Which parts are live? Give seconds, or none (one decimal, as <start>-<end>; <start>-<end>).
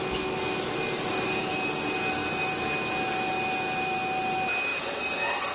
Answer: 0.0-5.5